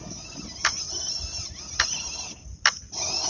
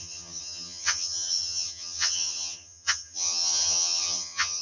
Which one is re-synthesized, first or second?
second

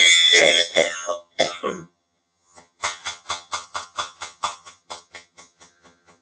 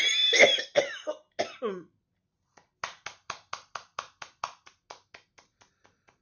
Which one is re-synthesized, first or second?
first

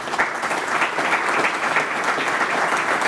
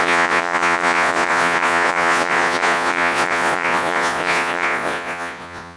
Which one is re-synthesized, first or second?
second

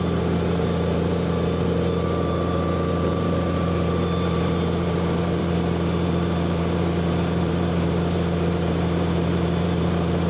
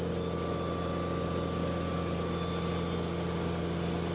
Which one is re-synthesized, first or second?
first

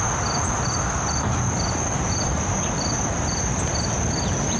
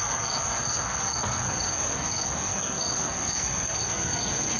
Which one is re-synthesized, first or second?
second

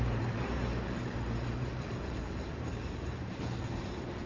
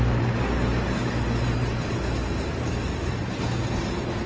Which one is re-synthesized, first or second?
first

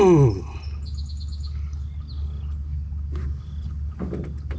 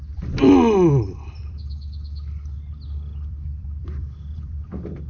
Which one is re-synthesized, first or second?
second